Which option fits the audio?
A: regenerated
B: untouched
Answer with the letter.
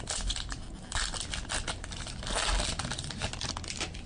B